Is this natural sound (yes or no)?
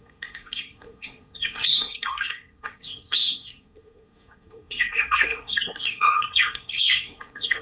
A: no